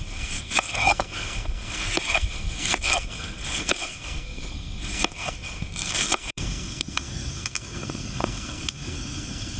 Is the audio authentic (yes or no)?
no